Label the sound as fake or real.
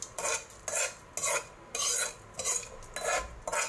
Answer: real